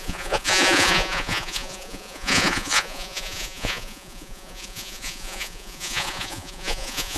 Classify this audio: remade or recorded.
remade